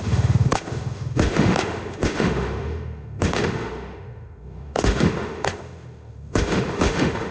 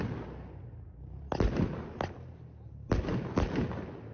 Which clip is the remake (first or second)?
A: first